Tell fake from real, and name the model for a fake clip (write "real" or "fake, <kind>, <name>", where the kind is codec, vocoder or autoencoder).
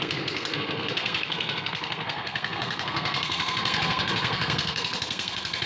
fake, codec, SNAC